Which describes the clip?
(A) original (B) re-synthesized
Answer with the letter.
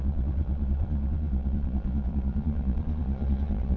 B